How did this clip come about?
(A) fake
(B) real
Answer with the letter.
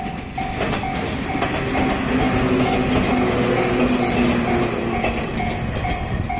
B